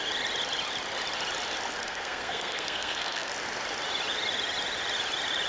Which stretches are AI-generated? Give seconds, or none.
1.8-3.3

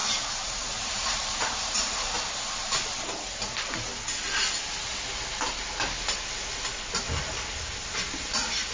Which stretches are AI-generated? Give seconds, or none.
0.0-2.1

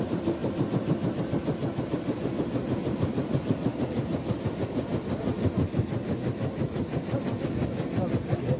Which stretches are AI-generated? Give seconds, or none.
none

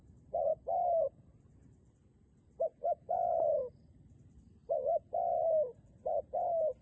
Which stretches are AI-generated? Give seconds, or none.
none

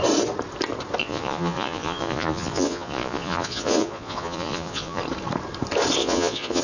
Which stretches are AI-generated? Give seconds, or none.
1.0-5.0; 6.0-6.6